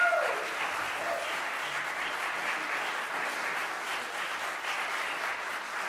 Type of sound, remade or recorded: recorded